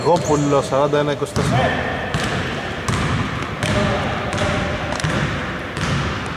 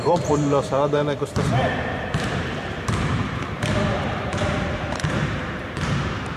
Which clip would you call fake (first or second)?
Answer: second